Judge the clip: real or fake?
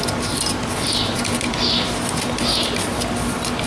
real